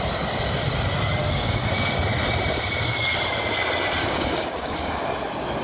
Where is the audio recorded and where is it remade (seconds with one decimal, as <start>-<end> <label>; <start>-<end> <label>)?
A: 0.0-1.2 recorded; 1.2-1.7 remade; 1.7-4.0 recorded; 4.0-4.9 remade; 4.9-5.6 recorded